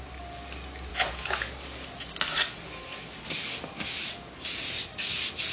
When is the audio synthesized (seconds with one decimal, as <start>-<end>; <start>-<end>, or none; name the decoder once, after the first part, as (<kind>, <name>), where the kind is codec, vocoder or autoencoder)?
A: 0.9-1.5 (vocoder, Vocos)